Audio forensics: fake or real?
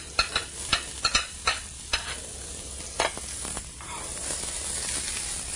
fake